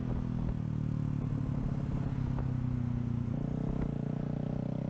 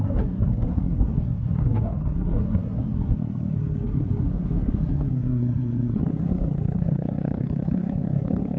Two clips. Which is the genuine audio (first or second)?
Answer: first